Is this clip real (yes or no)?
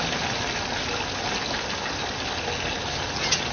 yes